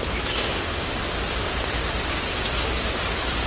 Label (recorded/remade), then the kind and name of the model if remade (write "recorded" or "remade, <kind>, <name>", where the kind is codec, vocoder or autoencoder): recorded